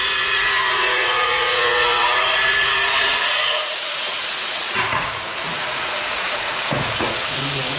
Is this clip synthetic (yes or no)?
yes